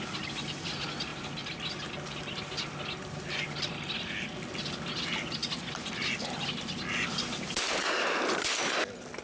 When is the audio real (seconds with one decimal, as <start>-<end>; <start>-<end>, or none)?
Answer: 0.0-9.2